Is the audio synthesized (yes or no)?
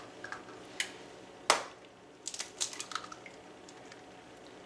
no